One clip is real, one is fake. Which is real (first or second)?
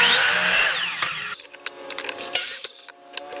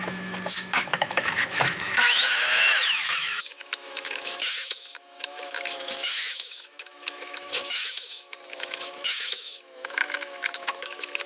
first